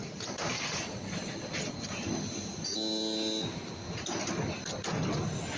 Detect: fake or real real